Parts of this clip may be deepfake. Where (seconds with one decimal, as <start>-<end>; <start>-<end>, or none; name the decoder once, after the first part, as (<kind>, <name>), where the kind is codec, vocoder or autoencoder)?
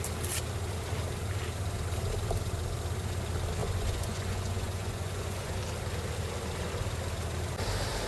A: 3.6-5.6 (vocoder, Vocos)